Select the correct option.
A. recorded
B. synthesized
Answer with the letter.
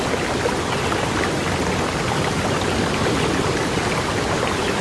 A